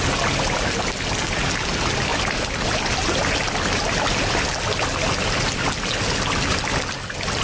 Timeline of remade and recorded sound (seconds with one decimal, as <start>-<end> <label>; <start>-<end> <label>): 0.0-7.4 recorded